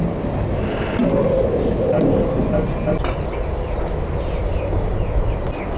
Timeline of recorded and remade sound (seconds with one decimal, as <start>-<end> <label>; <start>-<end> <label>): 0.0-5.8 recorded

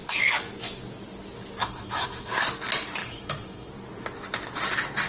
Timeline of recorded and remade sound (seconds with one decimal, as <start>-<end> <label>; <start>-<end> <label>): 0.0-1.6 recorded; 1.6-2.3 remade; 2.3-3.0 recorded; 3.0-3.7 remade; 3.7-5.1 recorded

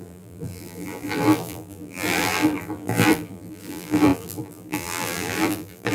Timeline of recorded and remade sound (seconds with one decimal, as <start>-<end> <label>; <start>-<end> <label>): 0.0-5.9 remade

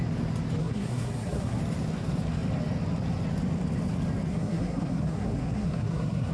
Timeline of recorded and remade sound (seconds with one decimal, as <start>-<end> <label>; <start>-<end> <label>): 0.0-0.6 recorded; 0.6-1.6 remade; 1.6-4.3 recorded; 4.3-6.3 remade

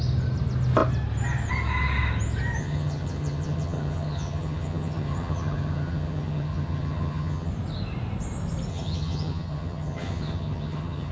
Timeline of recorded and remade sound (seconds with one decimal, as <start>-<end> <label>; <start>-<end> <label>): 0.0-2.6 recorded; 2.6-7.5 remade; 7.5-8.7 recorded; 8.7-11.1 remade

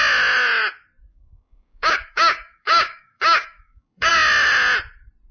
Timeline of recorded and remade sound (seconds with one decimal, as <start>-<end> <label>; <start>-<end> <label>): 0.0-1.1 recorded; 1.1-4.1 remade; 4.1-5.3 recorded